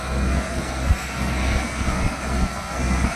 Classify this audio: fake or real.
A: fake